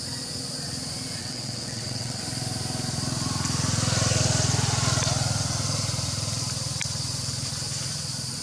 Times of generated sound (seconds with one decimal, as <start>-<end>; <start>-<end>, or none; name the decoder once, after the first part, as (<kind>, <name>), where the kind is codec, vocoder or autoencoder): 1.2-2.2 (vocoder, WaveNeXt)